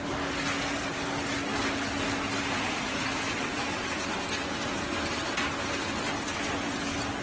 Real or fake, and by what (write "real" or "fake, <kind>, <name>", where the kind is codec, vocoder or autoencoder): real